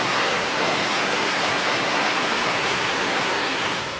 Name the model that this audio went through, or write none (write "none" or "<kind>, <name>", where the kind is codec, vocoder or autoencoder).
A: codec, SNAC